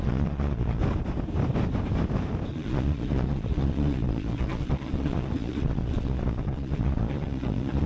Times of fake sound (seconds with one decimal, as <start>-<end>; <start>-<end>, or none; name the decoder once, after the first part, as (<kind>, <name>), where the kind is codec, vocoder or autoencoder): 0.0-0.8 (vocoder, Vocos); 2.5-7.9